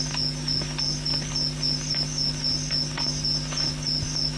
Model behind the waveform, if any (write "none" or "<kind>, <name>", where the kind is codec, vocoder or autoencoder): none